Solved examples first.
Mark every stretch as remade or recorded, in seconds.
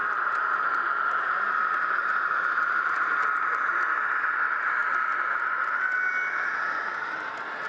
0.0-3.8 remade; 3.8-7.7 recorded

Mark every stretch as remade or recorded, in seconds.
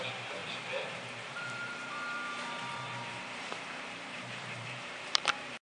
0.0-5.7 remade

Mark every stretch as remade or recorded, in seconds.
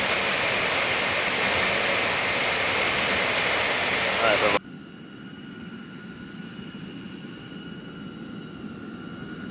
0.0-6.4 recorded; 6.4-7.6 remade; 7.6-9.5 recorded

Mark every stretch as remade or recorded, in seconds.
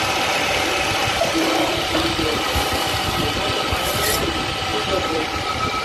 0.0-1.0 recorded; 1.0-1.7 remade; 1.7-4.7 recorded; 4.7-5.8 remade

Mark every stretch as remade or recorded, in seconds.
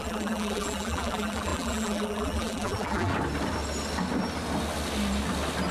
0.0-3.1 remade; 3.1-5.7 recorded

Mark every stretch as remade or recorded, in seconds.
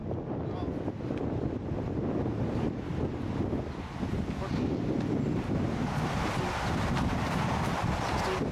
0.0-4.6 recorded; 4.6-8.5 remade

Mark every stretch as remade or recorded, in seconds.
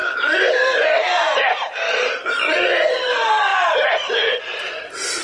0.0-5.2 remade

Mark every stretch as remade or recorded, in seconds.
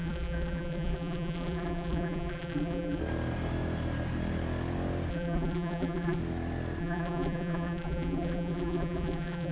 0.0-3.0 remade; 3.0-5.1 recorded; 5.1-6.2 remade; 6.2-6.8 recorded; 6.8-9.5 remade